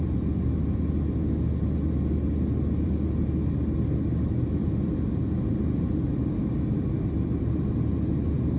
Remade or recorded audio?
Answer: recorded